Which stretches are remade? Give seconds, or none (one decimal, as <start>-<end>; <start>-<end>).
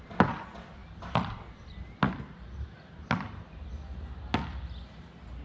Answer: none